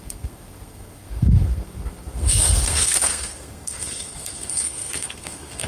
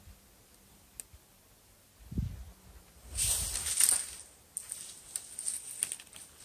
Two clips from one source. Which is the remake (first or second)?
first